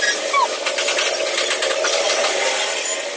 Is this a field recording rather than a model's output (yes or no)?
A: yes